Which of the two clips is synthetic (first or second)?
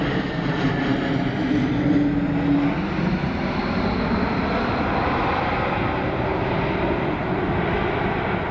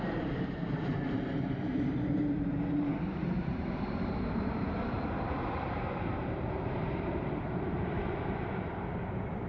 second